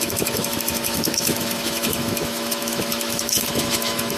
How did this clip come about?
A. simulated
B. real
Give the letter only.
A